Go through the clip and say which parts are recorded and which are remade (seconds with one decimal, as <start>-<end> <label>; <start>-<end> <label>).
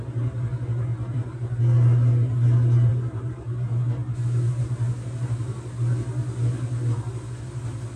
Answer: 0.0-0.9 recorded; 0.9-1.6 remade; 1.6-2.9 recorded; 2.9-3.7 remade; 3.7-8.0 recorded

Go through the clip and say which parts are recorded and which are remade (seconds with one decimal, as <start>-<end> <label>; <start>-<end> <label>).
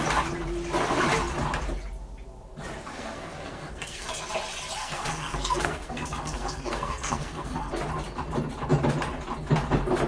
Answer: 0.0-2.9 recorded; 2.9-4.2 remade; 4.2-4.8 recorded; 4.8-7.7 remade; 7.7-10.1 recorded